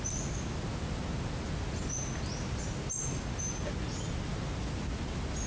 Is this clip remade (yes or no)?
no